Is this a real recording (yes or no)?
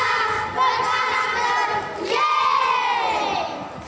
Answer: yes